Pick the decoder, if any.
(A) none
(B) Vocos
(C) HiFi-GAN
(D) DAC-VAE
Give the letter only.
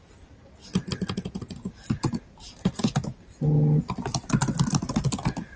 A